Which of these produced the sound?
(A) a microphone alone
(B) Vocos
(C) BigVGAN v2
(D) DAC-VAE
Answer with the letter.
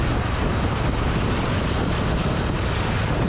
A